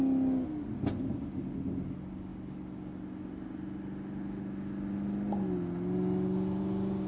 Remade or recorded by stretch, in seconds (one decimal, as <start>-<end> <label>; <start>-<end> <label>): 0.0-7.1 recorded